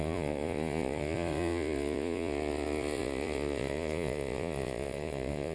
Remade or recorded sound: remade